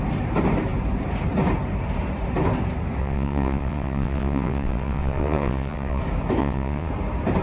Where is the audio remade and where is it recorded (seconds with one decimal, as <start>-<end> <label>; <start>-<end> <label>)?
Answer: 0.0-3.0 recorded; 3.0-6.0 remade; 6.0-6.4 recorded; 6.4-6.9 remade; 6.9-7.4 recorded